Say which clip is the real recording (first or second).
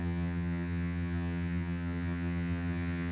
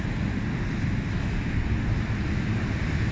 second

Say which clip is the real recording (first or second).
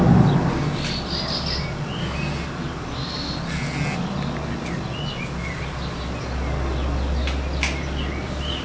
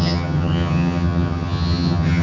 first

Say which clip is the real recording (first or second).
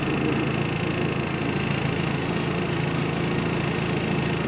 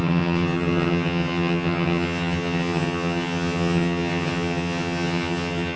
first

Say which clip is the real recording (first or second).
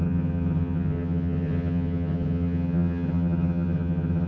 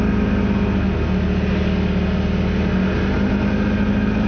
second